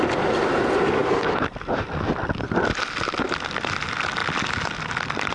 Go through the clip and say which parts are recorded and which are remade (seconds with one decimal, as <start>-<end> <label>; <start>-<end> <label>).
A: 0.0-5.3 recorded